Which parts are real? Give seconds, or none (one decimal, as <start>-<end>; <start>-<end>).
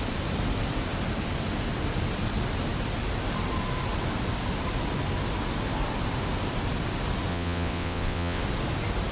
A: 0.0-7.3; 8.4-9.1